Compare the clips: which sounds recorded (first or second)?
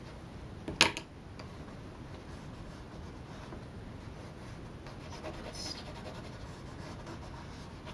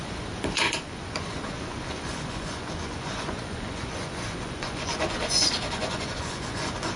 first